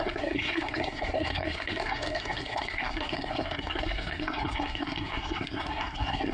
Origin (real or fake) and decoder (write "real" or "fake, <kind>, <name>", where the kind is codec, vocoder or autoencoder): fake, codec, SNAC